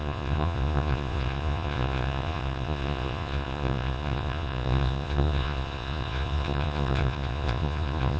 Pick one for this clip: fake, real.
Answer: fake